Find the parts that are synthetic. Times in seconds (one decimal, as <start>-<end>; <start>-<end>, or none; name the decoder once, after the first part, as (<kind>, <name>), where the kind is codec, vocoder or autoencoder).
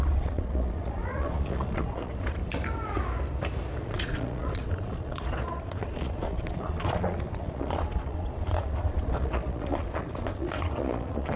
0.0-2.4 (vocoder, Vocos); 3.8-11.4